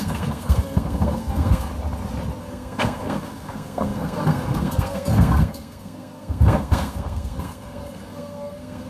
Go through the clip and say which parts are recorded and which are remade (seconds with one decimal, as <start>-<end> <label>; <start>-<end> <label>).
0.0-1.7 remade; 1.7-2.4 recorded; 2.4-8.9 remade